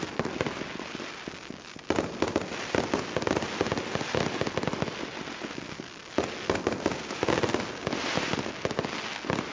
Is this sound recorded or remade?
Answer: recorded